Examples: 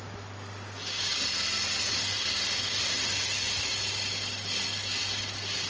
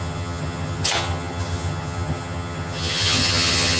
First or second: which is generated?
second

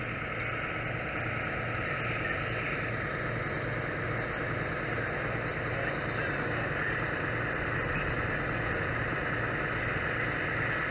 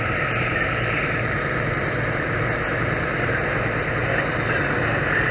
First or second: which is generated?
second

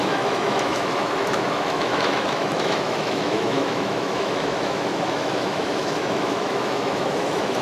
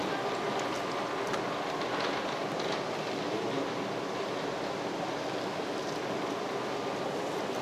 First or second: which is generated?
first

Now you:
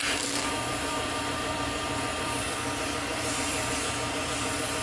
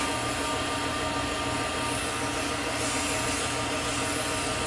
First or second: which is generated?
first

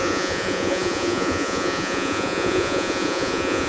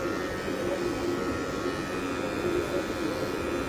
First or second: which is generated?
first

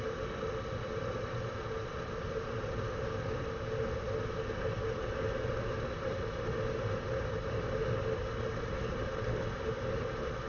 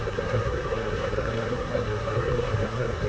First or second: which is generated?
second